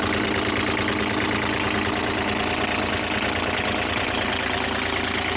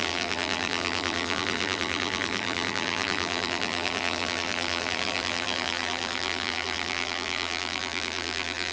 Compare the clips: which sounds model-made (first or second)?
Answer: second